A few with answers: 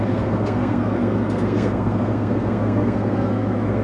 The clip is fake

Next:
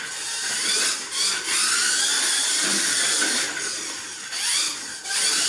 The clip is real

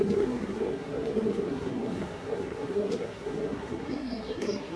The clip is fake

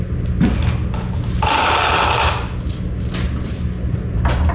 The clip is real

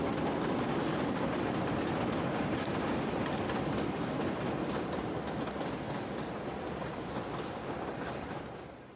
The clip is real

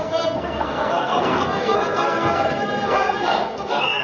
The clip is fake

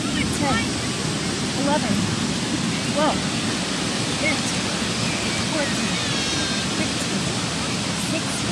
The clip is real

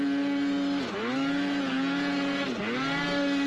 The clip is real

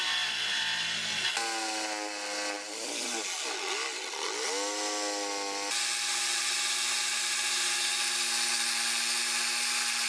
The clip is real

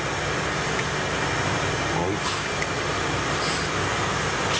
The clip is real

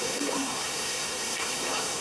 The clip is fake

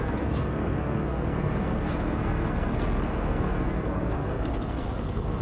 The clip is fake